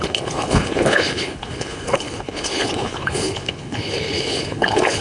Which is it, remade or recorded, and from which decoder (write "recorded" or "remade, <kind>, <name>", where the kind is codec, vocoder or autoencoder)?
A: remade, codec, HILCodec